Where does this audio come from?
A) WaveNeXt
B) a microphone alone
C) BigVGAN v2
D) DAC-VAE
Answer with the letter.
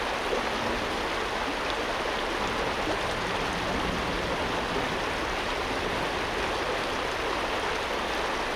B